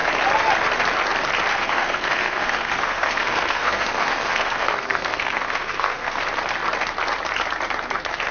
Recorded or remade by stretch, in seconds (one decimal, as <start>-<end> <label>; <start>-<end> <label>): 0.0-1.5 recorded; 1.5-6.2 remade; 6.2-8.3 recorded